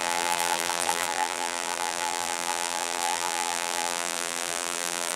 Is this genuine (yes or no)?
no